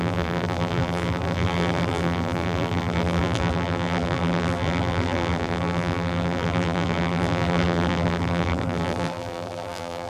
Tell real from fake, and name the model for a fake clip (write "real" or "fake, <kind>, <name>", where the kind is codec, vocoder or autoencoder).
fake, vocoder, BigVGAN v2